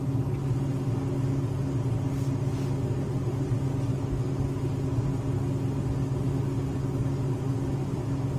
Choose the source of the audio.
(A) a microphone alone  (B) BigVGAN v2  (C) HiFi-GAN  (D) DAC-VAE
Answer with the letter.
A